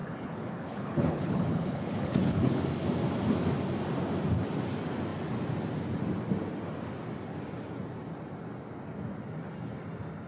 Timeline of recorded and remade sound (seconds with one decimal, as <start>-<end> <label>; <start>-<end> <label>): 0.0-2.6 remade; 2.6-10.3 recorded

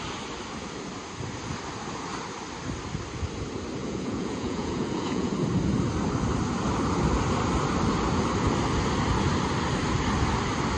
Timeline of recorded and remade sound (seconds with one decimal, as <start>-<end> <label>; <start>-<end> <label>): 0.0-3.8 recorded; 3.8-5.3 remade; 5.3-10.8 recorded

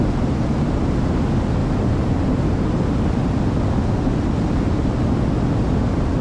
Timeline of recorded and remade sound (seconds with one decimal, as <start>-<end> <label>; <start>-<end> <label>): 0.0-6.2 recorded

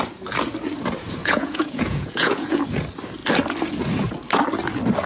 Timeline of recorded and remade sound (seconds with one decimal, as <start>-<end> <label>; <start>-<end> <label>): 0.0-1.2 recorded; 1.2-2.6 remade; 2.6-5.1 recorded

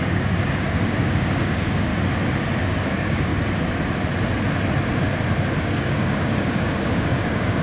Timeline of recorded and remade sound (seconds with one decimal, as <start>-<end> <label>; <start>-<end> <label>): 0.0-1.9 remade; 1.9-2.6 recorded; 2.6-3.3 remade; 3.3-5.6 recorded; 5.6-7.6 remade

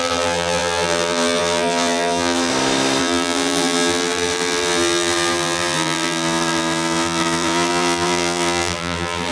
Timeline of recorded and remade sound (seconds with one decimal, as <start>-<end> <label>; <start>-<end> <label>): 0.0-2.5 remade; 2.5-3.0 recorded; 3.0-9.3 remade